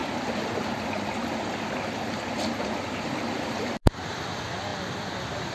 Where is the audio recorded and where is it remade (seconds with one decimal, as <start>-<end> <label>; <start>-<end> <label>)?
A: 0.0-5.5 recorded